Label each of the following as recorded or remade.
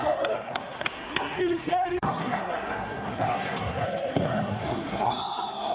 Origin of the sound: remade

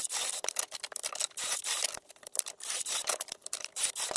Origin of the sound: recorded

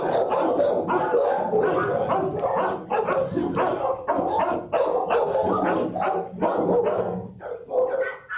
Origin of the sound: recorded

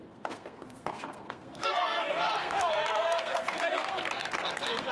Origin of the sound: remade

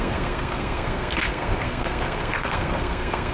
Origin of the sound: remade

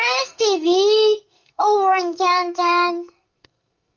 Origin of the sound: remade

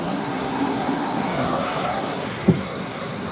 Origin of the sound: remade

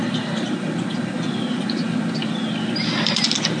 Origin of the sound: recorded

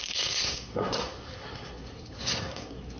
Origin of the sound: remade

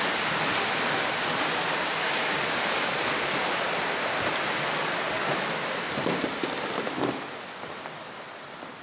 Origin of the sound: recorded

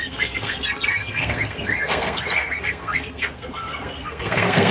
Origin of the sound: remade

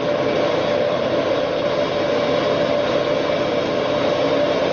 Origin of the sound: recorded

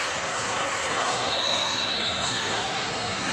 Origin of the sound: remade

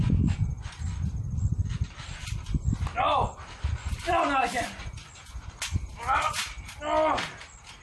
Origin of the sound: recorded